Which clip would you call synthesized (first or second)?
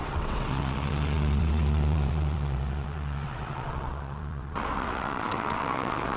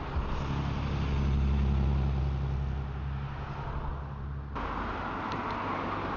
first